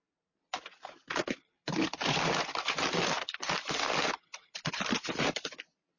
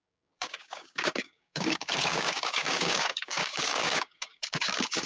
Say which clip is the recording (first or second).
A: first